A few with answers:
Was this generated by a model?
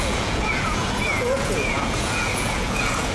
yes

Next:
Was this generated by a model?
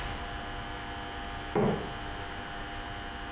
no